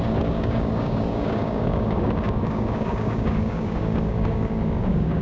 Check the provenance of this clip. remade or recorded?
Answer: remade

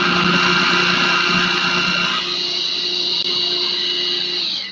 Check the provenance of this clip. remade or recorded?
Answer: recorded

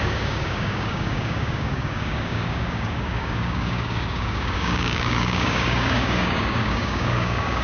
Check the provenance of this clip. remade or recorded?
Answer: remade